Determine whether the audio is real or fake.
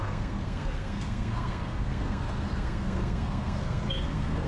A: fake